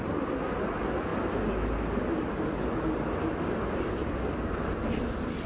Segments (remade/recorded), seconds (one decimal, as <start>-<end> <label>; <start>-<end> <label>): 0.0-4.0 recorded; 4.0-4.6 remade; 4.6-5.5 recorded